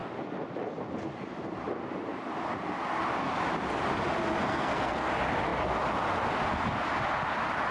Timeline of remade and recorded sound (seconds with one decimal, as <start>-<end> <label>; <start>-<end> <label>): 0.0-4.5 recorded; 4.5-5.1 remade; 5.1-7.7 recorded